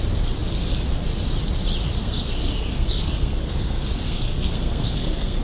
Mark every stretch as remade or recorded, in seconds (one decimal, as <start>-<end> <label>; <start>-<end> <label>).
0.0-2.0 recorded; 2.0-5.4 remade